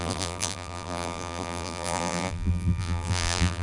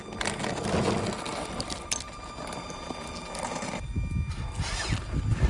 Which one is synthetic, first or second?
first